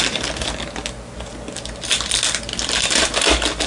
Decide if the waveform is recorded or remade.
recorded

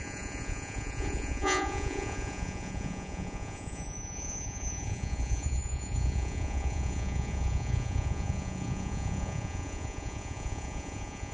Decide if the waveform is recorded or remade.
remade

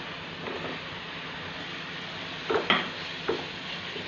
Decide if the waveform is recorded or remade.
recorded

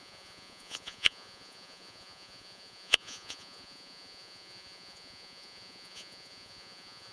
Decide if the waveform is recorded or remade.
remade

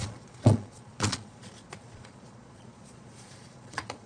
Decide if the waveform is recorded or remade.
remade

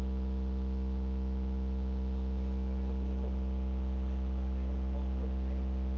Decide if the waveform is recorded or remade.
recorded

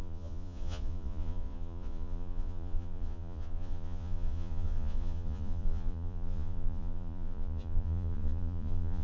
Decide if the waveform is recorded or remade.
remade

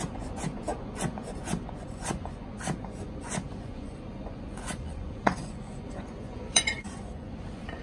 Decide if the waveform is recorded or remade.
remade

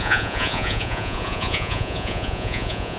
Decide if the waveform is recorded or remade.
remade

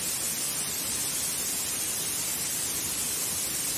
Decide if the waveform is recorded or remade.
recorded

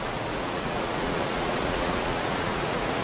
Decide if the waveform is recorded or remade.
remade